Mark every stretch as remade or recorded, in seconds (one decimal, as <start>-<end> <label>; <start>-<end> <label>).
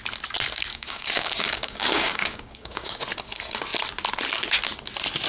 0.0-0.7 recorded; 0.7-3.0 remade; 3.0-5.3 recorded